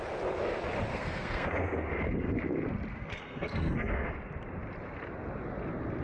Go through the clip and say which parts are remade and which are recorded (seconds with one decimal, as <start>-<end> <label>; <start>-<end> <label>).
0.0-0.9 recorded; 0.9-1.9 remade; 1.9-2.9 recorded; 2.9-4.1 remade; 4.1-6.0 recorded